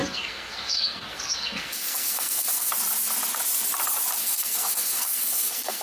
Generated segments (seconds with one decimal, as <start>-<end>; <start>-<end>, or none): 0.0-2.7; 4.2-5.8